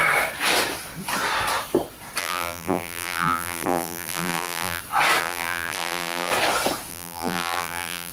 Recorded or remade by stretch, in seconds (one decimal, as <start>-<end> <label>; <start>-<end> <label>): 0.0-2.2 recorded; 2.2-4.8 remade; 4.8-5.2 recorded; 5.2-6.3 remade; 6.3-6.9 recorded; 6.9-8.1 remade